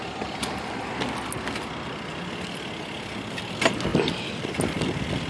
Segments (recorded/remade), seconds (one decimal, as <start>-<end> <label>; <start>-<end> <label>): 0.0-5.3 recorded